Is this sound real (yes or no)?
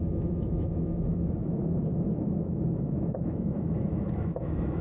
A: no